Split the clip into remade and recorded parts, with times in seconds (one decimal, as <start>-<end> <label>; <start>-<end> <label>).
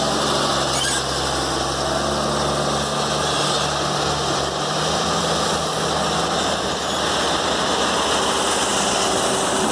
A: 0.0-9.7 recorded